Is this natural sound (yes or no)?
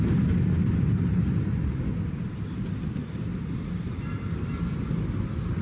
yes